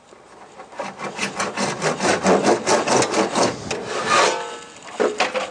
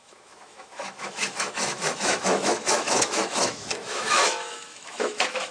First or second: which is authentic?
first